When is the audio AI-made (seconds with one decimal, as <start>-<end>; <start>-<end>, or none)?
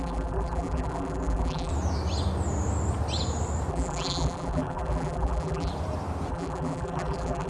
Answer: 0.0-1.7; 3.7-5.7; 6.3-7.5